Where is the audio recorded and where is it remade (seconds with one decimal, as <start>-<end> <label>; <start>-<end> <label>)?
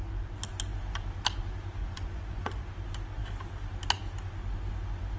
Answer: 0.0-1.8 recorded; 1.8-2.7 remade; 2.7-5.2 recorded